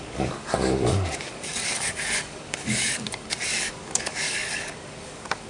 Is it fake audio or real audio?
fake